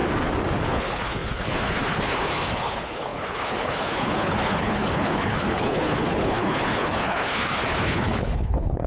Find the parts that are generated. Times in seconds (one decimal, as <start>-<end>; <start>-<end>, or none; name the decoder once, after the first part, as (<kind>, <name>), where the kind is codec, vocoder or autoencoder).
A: 0.7-8.9 (codec, HILCodec)

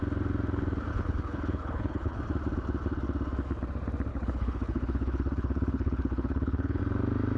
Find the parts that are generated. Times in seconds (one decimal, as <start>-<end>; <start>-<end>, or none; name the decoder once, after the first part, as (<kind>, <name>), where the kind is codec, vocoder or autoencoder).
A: 0.9-2.2 (codec, HILCodec); 4.1-6.8

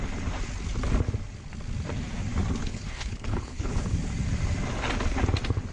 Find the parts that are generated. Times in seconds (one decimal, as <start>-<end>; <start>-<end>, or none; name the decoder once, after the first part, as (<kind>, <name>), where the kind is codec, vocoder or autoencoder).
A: 2.6-3.8 (codec, HILCodec)

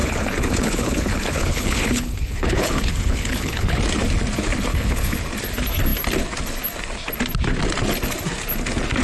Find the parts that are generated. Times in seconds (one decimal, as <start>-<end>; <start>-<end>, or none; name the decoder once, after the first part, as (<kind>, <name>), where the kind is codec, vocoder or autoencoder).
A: 0.0-3.8 (codec, HILCodec); 4.7-5.2